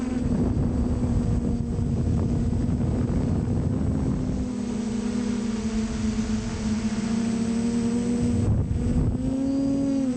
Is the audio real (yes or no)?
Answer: yes